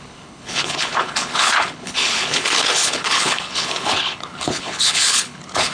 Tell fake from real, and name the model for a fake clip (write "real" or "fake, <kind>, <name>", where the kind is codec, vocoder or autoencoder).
fake, codec, HILCodec